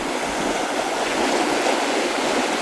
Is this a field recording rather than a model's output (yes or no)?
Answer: no